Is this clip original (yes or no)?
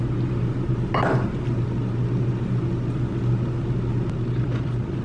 yes